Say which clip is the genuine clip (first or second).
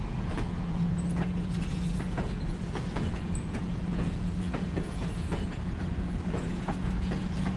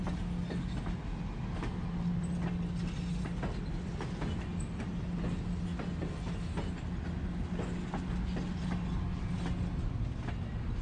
second